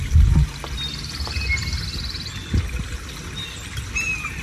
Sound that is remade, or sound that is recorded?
recorded